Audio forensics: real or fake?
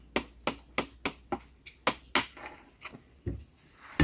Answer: real